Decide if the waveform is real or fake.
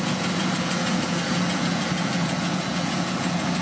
fake